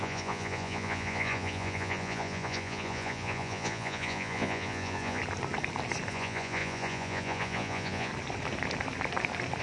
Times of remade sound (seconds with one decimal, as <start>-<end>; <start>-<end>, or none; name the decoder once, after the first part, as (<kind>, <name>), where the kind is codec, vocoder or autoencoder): 0.0-5.2 (vocoder, Vocos); 6.1-8.1